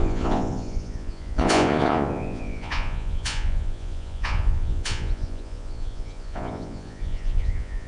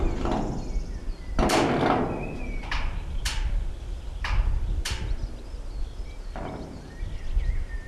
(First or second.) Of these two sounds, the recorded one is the second